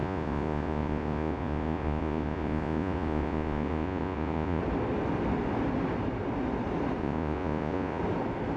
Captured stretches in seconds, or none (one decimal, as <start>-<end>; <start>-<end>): 4.6-7.0; 8.0-8.6